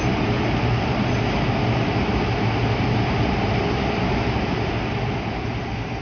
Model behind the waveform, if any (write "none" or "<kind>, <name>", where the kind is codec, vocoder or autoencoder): none